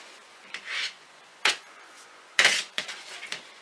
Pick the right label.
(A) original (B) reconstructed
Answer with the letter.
B